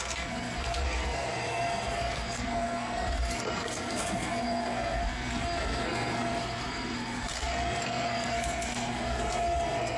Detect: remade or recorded remade